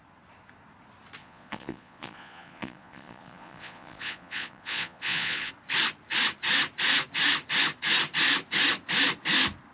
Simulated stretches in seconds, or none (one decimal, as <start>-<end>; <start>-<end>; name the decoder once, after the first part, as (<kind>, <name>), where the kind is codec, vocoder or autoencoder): 1.2-5.5 (vocoder, Vocos)